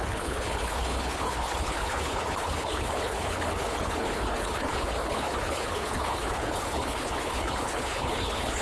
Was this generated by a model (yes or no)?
yes